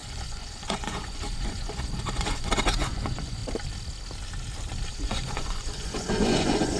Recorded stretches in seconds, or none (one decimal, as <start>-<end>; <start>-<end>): 3.4-4.9